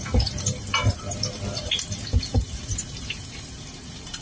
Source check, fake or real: fake